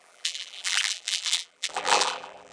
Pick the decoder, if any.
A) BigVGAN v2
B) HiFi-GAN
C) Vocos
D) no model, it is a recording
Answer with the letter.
A